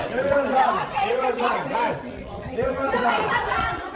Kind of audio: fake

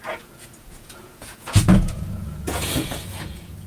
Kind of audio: fake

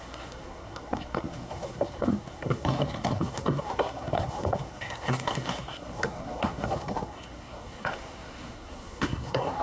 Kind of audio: fake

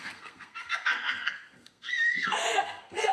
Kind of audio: fake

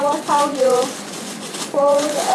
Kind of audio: fake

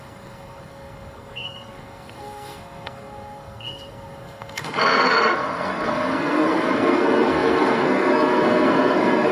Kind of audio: fake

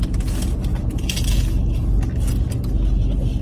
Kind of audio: real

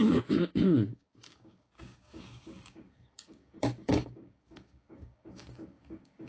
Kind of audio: fake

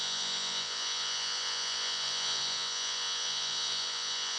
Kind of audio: fake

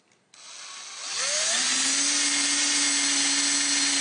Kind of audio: real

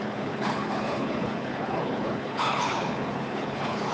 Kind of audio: fake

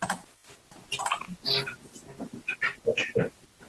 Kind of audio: real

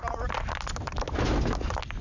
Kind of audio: real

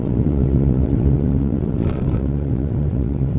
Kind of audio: fake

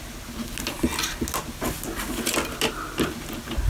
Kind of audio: real